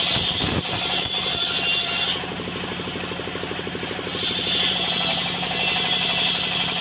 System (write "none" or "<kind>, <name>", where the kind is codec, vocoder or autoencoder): none